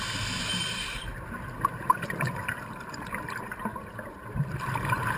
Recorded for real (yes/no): yes